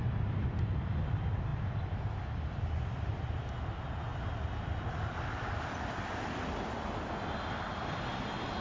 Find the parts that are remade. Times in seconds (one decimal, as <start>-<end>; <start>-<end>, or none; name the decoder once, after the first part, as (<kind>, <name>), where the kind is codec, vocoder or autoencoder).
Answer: none

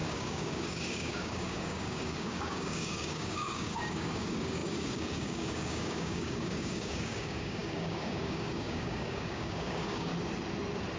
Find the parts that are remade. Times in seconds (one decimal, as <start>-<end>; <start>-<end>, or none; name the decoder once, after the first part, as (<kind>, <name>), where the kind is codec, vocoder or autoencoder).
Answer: 0.0-10.1 (codec, DAC)

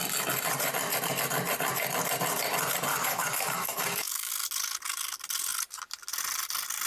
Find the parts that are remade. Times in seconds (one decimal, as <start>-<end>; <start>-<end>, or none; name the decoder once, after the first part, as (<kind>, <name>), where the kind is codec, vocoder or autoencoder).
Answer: 2.9-4.3 (codec, DAC)

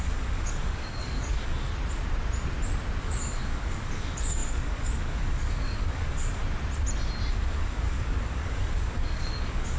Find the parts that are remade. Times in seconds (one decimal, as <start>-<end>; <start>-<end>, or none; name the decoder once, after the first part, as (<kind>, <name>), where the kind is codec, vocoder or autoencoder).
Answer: 0.0-1.7 (codec, DAC); 3.0-6.4; 7.3-9.8

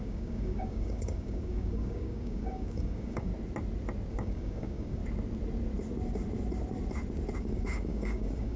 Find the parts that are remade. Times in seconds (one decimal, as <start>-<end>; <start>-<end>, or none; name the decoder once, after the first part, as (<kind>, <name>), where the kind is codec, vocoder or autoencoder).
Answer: 0.0-3.3 (codec, DAC); 4.1-5.0; 7.4-8.6

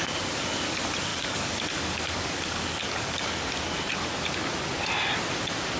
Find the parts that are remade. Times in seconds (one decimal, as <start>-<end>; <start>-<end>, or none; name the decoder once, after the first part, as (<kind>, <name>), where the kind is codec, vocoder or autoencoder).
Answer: 1.1-3.4 (codec, DAC)